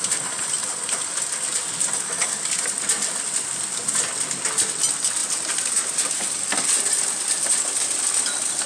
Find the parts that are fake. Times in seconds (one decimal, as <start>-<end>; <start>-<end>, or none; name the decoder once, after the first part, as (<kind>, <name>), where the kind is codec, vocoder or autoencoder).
none